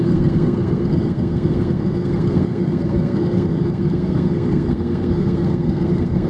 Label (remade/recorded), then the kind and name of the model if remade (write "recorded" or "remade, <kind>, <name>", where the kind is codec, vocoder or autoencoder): remade, codec, SNAC